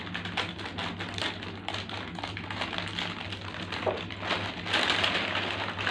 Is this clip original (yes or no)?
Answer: yes